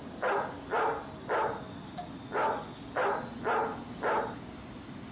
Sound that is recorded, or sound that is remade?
recorded